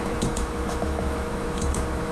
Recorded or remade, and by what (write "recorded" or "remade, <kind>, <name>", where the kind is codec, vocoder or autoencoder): remade, autoencoder, DAC-VAE